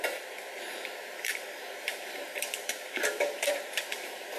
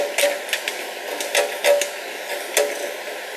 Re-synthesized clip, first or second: first